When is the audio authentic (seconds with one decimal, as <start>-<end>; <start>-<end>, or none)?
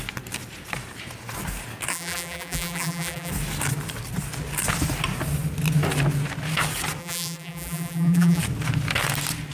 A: 0.0-1.9; 3.3-7.0; 8.4-9.5